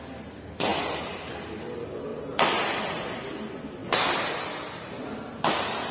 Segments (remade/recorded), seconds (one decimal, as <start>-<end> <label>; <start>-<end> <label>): 0.0-0.7 recorded; 0.7-1.3 remade; 1.3-2.1 recorded; 2.1-3.2 remade; 3.2-3.8 recorded; 3.8-4.3 remade; 4.3-5.9 recorded